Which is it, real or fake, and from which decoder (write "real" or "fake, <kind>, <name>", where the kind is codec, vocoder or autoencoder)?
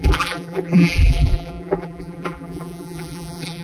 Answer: fake, vocoder, BigVGAN v2